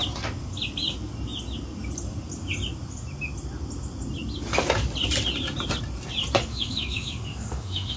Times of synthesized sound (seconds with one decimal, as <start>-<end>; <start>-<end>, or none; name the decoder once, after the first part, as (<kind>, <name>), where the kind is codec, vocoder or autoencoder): 6.5-8.0 (autoencoder, DAC-VAE)